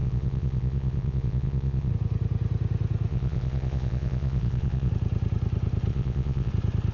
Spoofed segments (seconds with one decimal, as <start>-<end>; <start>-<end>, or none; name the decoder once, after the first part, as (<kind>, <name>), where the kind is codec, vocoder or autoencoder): 0.0-1.9 (vocoder, Vocos); 3.1-4.9; 5.9-6.5